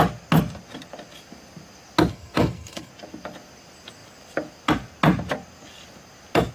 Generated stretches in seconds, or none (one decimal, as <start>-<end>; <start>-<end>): 2.1-2.9